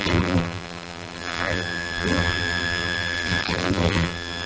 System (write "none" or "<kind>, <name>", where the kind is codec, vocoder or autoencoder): vocoder, BigVGAN v2